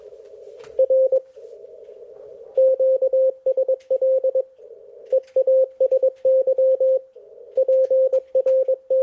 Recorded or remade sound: recorded